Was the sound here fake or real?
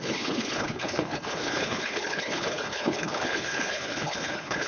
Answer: fake